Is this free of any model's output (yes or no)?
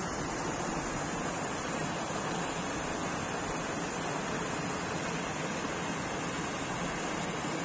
yes